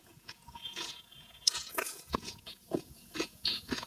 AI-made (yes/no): yes